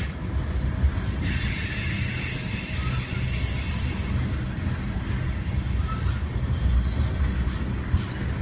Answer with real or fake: real